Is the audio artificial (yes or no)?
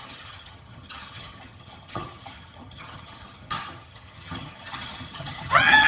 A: yes